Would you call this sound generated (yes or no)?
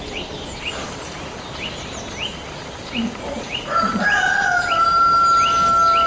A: no